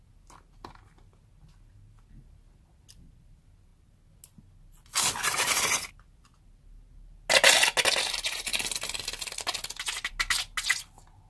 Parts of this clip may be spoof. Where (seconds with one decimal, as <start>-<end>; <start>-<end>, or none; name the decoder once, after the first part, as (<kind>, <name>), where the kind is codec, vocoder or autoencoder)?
none